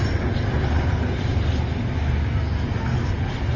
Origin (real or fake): real